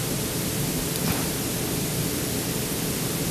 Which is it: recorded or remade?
recorded